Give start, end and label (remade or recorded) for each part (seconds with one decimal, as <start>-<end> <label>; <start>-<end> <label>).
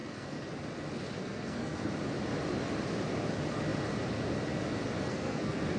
0.0-0.5 remade; 0.5-1.2 recorded; 1.2-1.9 remade; 1.9-5.0 recorded; 5.0-5.8 remade